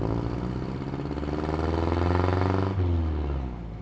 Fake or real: real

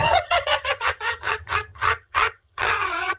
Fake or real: fake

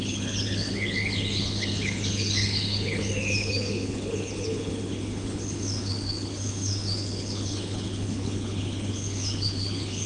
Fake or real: fake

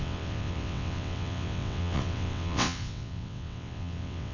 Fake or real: fake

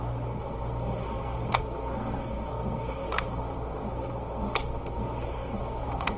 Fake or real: fake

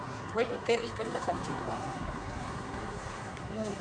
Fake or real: fake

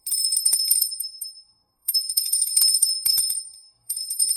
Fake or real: fake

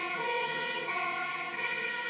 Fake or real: fake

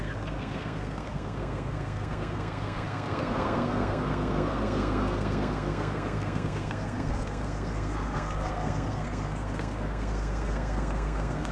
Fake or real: fake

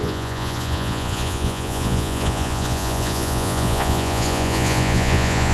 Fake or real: fake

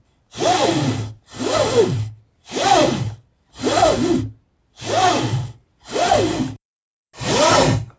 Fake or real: real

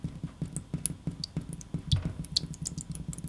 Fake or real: real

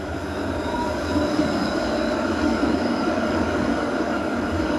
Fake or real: fake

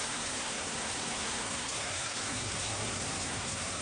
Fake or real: fake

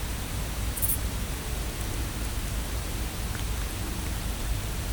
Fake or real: real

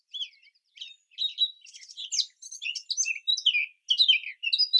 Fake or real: real